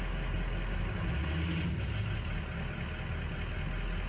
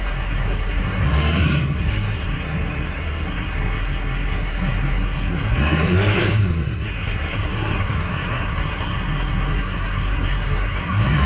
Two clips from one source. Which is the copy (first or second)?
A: second